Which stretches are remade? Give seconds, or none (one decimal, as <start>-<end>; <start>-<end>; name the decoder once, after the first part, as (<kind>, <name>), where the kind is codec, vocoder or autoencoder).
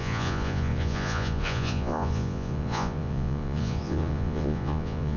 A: 0.0-5.2 (vocoder, Vocos)